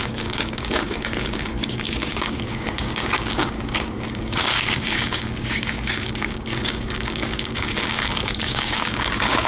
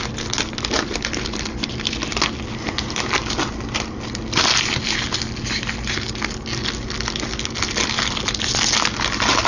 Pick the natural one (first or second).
second